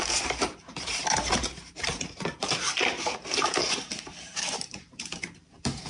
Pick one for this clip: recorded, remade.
remade